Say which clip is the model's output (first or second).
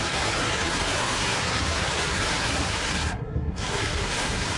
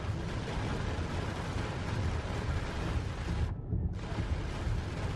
first